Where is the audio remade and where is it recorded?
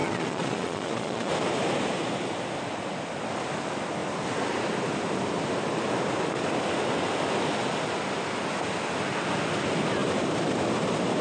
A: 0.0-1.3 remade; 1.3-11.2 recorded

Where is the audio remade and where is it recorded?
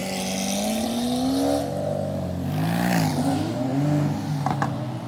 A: 0.0-5.1 recorded